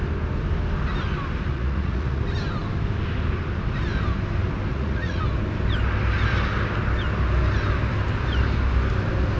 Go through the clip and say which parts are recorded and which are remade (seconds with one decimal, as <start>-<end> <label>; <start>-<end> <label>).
0.0-1.5 recorded; 1.5-2.2 remade; 2.2-4.7 recorded; 4.7-5.2 remade; 5.2-9.4 recorded